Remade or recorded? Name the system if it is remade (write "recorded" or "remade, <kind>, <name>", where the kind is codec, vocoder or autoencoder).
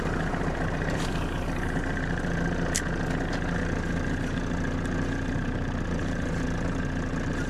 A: recorded